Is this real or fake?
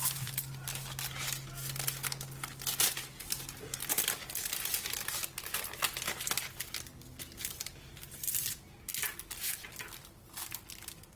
real